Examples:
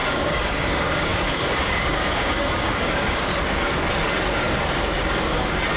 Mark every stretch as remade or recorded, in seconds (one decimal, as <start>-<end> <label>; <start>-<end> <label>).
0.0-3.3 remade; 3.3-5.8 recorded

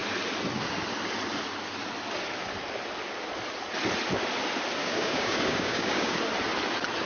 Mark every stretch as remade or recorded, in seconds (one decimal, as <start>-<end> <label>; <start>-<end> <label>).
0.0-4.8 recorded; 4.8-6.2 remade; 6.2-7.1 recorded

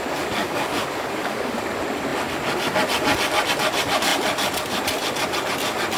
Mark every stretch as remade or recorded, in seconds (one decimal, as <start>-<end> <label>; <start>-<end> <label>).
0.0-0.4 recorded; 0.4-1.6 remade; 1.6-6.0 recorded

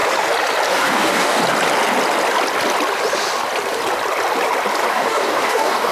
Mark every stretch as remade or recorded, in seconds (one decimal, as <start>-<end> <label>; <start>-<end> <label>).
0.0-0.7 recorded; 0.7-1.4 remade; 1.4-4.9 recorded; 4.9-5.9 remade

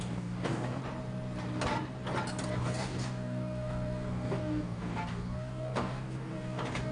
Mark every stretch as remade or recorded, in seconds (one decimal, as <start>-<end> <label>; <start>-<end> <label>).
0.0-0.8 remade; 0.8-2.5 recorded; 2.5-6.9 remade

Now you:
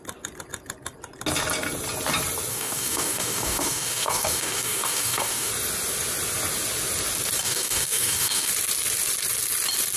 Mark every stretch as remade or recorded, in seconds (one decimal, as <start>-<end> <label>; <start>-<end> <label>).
0.0-2.5 recorded; 2.5-5.5 remade; 5.5-7.4 recorded; 7.4-8.5 remade; 8.5-10.0 recorded